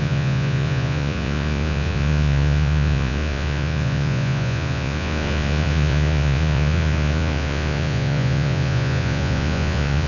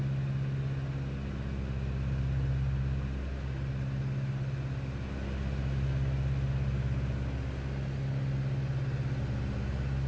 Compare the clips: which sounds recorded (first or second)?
second